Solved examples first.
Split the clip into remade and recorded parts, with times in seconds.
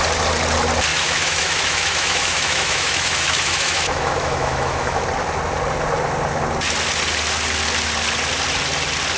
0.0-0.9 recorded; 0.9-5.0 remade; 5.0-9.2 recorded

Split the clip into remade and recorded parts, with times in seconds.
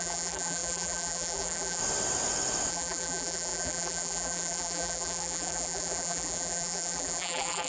0.0-1.8 remade; 1.8-2.7 recorded; 2.7-7.7 remade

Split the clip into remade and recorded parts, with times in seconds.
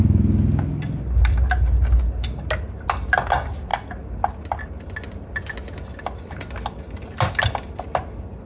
0.0-8.5 recorded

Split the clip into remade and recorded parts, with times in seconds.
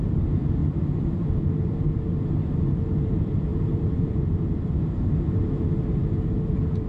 0.0-0.6 remade; 0.6-1.4 recorded; 1.4-6.9 remade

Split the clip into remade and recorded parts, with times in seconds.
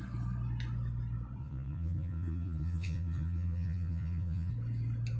0.0-1.4 recorded; 1.4-4.5 remade; 4.5-5.2 recorded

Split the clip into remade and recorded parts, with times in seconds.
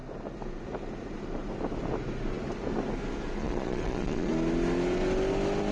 0.0-3.4 recorded; 3.4-4.3 remade; 4.3-5.7 recorded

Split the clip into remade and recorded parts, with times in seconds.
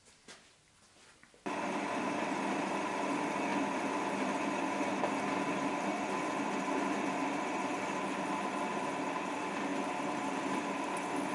0.0-11.3 recorded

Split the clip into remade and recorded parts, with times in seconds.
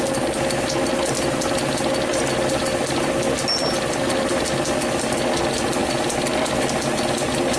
0.0-7.6 recorded